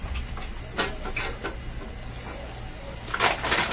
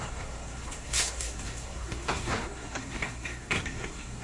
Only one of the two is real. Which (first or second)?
first